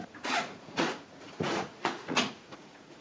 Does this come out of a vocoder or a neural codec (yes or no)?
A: yes